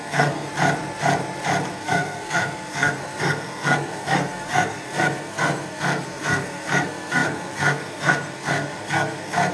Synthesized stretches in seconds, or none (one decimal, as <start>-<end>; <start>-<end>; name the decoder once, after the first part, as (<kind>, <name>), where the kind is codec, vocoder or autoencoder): 0.0-0.5 (codec, SNAC); 1.7-9.5